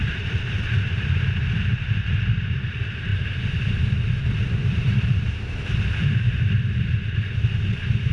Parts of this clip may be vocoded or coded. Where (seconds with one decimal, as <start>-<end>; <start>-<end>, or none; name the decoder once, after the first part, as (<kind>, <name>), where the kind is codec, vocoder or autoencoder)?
0.0-8.1 (vocoder, BigVGAN v2)